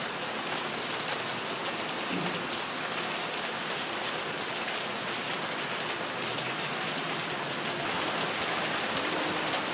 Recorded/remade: recorded